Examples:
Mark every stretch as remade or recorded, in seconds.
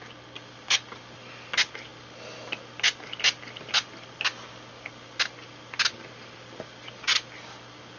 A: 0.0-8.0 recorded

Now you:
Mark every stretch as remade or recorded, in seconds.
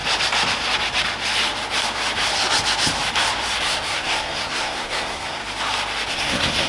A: 0.0-3.6 recorded; 3.6-5.4 remade; 5.4-6.1 recorded; 6.1-6.7 remade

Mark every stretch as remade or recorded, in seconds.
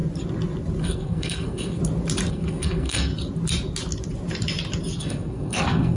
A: 0.0-0.8 recorded; 0.8-1.8 remade; 1.8-2.3 recorded; 2.3-3.1 remade; 3.1-5.0 recorded; 5.0-6.0 remade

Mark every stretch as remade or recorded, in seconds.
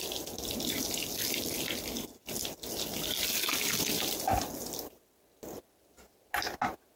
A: 0.0-7.0 recorded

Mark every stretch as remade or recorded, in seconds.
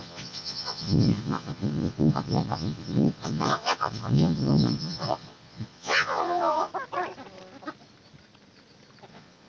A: 0.0-6.7 remade; 6.7-9.1 recorded; 9.1-9.5 remade